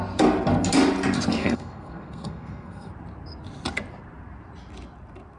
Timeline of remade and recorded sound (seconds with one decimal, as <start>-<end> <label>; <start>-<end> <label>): 0.0-1.4 recorded; 1.4-2.9 remade; 2.9-5.4 recorded